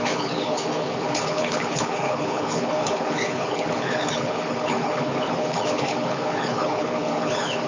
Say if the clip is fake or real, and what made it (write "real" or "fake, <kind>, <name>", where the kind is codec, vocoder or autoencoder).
fake, codec, HILCodec